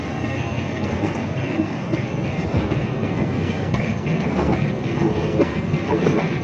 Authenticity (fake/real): fake